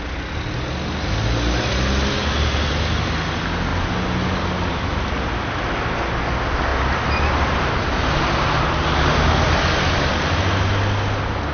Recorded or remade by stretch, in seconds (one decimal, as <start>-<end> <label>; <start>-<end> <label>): 0.0-11.5 recorded